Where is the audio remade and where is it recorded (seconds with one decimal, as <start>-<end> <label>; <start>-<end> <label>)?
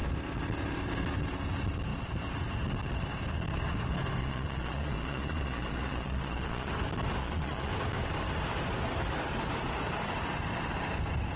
0.0-4.2 recorded; 4.2-6.7 remade; 6.7-7.2 recorded; 7.2-7.7 remade; 7.7-11.4 recorded